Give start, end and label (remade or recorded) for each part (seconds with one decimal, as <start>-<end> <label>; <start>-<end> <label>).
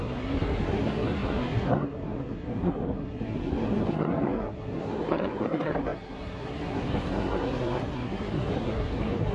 0.0-9.3 remade